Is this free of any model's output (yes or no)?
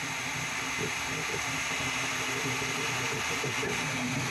yes